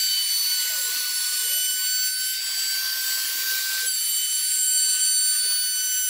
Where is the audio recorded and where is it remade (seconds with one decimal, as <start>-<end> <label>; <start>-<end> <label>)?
0.0-1.7 remade; 1.7-3.0 recorded; 3.0-5.2 remade; 5.2-6.1 recorded